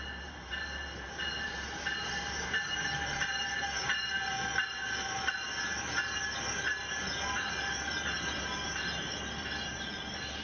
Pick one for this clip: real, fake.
fake